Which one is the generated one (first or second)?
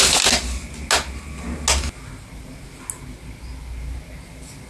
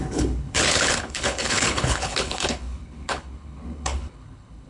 second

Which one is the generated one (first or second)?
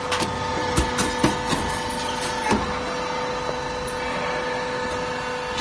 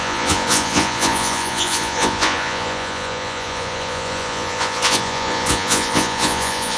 second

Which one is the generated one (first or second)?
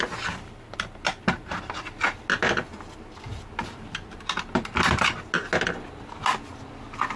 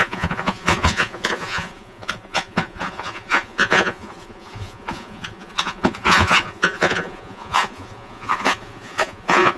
second